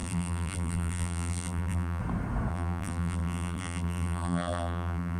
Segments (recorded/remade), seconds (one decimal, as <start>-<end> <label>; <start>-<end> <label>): 0.0-2.0 remade; 2.0-2.5 recorded; 2.5-5.2 remade